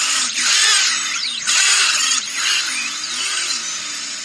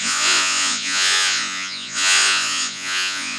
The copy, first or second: second